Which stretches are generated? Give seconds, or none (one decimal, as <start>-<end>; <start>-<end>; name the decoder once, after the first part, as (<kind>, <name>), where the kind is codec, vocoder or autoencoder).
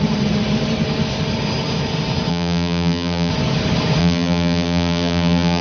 2.3-3.3 (vocoder, BigVGAN v2); 4.0-5.6